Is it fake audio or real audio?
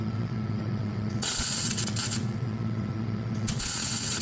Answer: fake